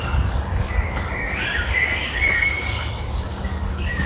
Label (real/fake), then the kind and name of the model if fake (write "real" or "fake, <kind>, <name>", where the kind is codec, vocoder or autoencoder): fake, codec, DAC